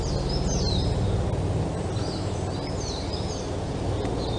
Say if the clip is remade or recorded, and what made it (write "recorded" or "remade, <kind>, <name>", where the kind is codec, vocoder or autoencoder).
recorded